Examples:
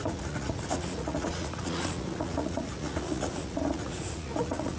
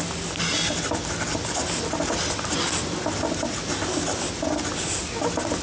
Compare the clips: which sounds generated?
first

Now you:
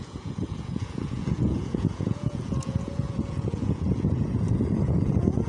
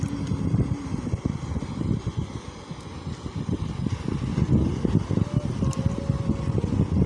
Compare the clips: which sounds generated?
first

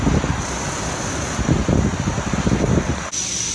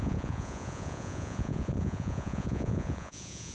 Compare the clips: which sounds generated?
second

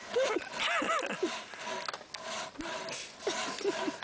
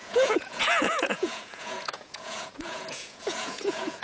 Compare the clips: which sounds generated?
second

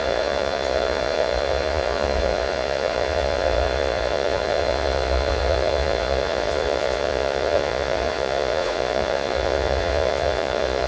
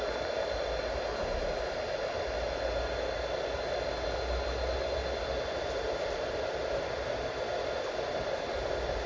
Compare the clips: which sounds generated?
first